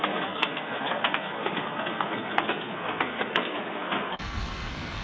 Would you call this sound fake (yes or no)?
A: yes